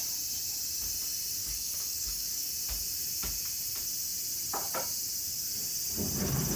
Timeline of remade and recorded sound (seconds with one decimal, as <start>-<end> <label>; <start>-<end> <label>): 0.0-1.4 recorded; 1.4-2.5 remade; 2.5-6.6 recorded